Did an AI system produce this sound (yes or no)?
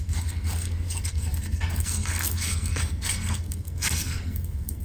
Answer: yes